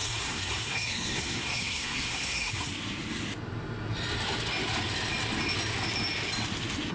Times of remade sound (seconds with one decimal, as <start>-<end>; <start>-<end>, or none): 0.0-2.7